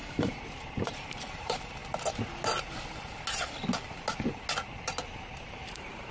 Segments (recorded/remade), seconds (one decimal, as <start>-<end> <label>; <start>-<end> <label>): 0.0-1.8 remade; 1.8-5.5 recorded; 5.5-6.1 remade